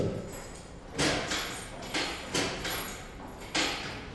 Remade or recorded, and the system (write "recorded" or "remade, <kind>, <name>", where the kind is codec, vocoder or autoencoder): recorded